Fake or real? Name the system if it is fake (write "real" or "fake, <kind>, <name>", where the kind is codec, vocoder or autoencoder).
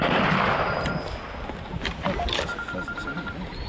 real